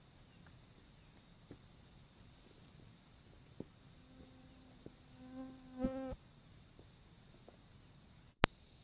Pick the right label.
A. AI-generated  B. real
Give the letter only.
B